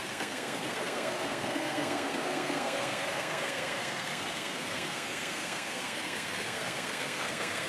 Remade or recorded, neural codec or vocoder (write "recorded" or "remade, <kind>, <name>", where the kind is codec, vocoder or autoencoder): remade, codec, SNAC